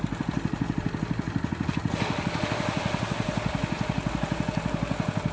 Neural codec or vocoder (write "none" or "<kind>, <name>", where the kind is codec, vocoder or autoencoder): none